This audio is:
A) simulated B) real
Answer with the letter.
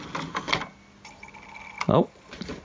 B